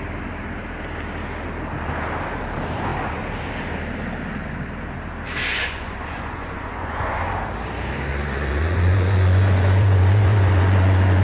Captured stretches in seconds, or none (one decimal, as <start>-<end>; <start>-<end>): 0.0-5.5; 7.2-8.1